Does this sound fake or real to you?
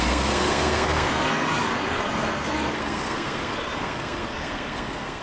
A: fake